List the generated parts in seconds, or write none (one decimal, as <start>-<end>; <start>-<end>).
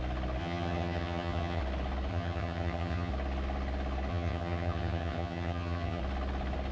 0.4-1.6; 2.1-3.1; 4.1-6.0